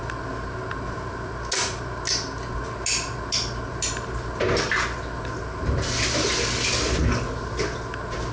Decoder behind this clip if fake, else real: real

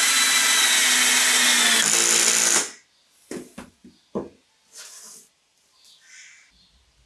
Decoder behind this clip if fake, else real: real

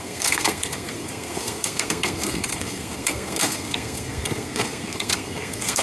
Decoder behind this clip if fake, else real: fake, codec, SNAC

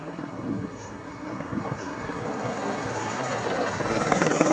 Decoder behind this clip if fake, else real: fake, codec, SNAC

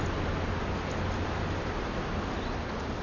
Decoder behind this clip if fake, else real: real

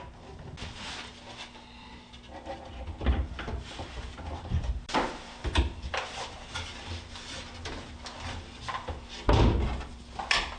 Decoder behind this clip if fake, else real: real